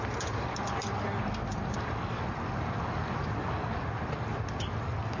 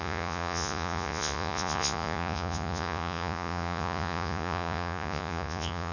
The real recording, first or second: first